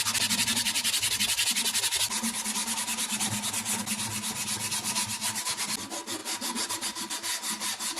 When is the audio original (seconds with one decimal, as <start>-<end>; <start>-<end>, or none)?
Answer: 0.0-8.0